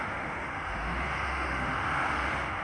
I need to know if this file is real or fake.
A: fake